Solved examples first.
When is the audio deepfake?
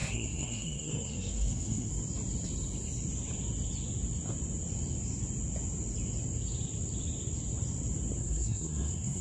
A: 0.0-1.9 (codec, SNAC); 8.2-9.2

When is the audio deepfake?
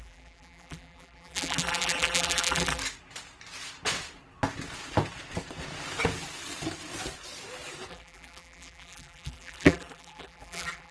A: 0.0-2.8 (vocoder, BigVGAN v2); 7.9-10.9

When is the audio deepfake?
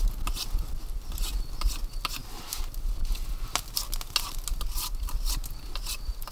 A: none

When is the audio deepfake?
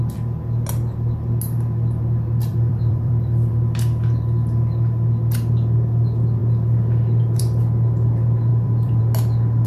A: 2.5-3.5 (vocoder, BigVGAN v2); 8.5-9.0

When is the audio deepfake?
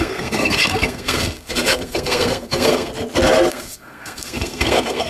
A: 0.0-2.9 (codec, SNAC); 3.5-5.1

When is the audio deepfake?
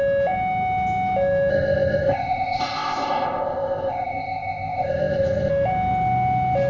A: 1.5-5.5 (codec, ZipCodec)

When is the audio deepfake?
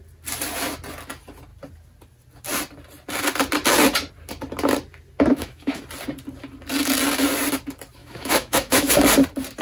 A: 5.3-5.8 (autoencoder, DAC-VAE); 8.0-8.9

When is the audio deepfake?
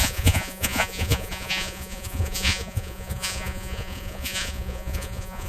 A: 0.0-5.5 (vocoder, Vocos)